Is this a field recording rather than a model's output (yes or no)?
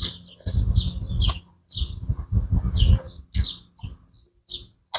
yes